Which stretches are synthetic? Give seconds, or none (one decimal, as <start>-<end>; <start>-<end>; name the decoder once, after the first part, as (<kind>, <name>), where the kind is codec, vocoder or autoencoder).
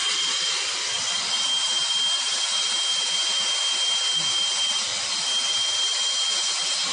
none